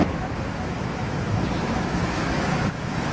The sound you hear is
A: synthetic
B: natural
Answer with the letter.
A